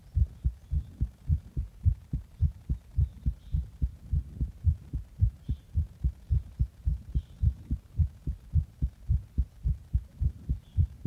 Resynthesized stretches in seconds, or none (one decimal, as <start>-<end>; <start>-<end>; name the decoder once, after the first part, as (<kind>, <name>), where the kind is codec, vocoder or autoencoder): none